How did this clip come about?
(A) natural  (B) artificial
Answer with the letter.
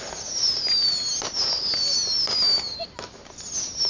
A